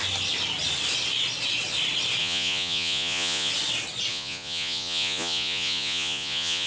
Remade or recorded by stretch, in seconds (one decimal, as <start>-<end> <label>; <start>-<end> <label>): 0.0-2.2 recorded; 2.2-3.5 remade; 3.5-4.1 recorded; 4.1-6.7 remade